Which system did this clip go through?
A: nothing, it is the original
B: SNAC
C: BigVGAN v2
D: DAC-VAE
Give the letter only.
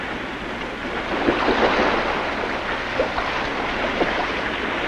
A